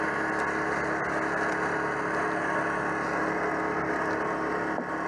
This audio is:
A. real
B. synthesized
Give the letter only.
A